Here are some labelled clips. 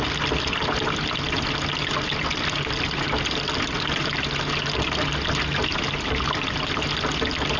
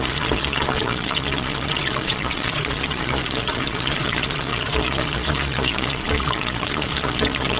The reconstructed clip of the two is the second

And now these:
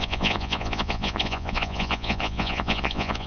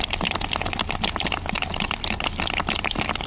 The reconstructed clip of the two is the first